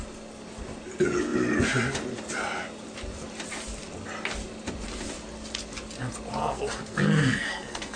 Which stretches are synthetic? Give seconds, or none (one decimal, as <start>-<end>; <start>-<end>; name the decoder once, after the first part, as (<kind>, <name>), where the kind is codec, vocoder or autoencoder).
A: 6.4-8.0 (codec, SNAC)